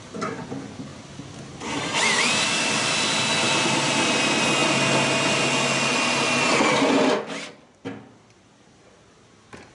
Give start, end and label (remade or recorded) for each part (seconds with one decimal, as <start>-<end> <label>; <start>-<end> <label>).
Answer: 0.0-9.7 recorded